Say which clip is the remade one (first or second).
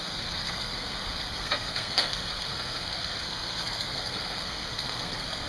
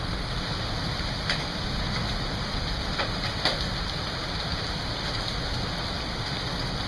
first